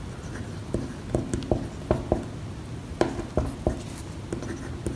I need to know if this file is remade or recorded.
recorded